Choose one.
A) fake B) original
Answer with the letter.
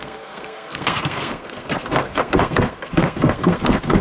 A